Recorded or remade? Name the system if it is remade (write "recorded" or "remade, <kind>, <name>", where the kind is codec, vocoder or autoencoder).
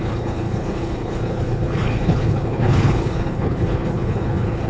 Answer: remade, codec, HILCodec